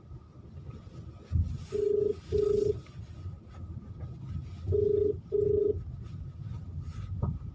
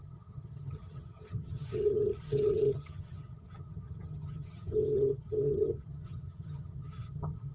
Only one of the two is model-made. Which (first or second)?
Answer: second